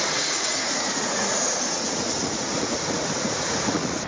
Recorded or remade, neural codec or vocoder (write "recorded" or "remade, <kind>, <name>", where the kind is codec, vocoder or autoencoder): remade, vocoder, Vocos